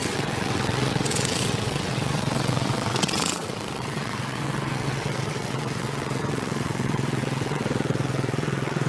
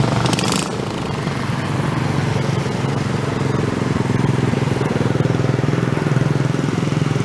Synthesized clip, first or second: first